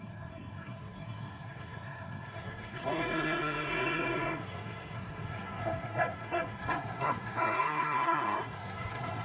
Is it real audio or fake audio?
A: fake